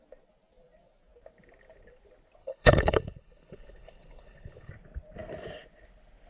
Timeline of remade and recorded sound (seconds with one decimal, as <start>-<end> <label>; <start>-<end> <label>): 0.0-2.4 recorded; 2.4-4.7 remade; 4.7-6.3 recorded